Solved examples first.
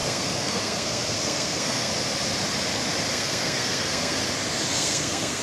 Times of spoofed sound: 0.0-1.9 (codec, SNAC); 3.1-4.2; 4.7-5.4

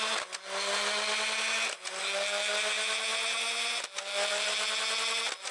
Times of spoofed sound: none

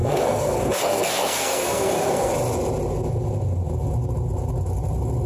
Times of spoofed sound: 0.0-2.3 (codec, SNAC)

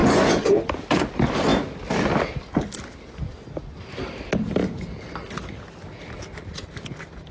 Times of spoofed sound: 0.0-0.6 (vocoder, Vocos)

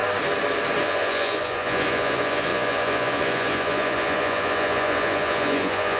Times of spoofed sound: 0.8-6.0 (vocoder, Vocos)